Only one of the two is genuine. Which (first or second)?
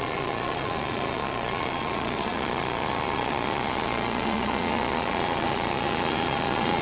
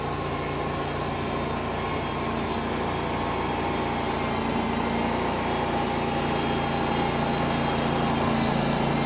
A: second